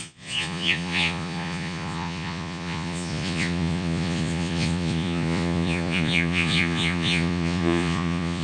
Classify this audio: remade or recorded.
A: remade